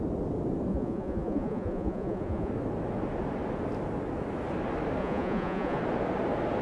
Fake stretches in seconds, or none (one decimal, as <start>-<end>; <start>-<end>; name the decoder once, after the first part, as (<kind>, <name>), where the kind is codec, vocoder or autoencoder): 0.7-2.5 (vocoder, Vocos); 5.0-5.8